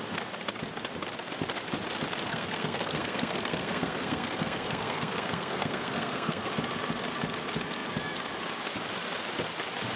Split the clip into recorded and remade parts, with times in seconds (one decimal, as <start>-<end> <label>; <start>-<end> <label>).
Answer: 0.0-2.3 recorded; 2.3-6.5 remade; 6.5-10.0 recorded